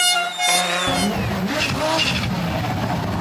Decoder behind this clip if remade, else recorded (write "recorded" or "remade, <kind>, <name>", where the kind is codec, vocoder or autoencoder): recorded